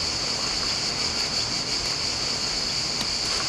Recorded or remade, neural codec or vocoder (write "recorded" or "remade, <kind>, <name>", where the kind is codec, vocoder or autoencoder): recorded